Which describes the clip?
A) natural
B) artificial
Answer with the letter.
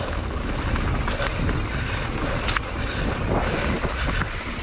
A